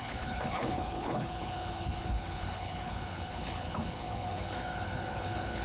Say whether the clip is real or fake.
fake